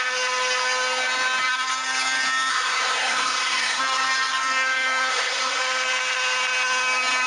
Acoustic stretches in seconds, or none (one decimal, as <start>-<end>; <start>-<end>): 0.0-2.5; 3.8-5.1; 5.6-7.3